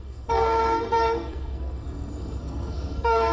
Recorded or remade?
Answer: remade